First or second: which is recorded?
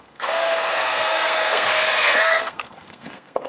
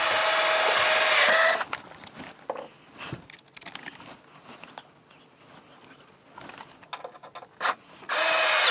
second